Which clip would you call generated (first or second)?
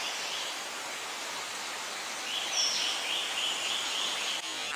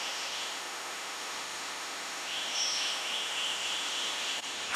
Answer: second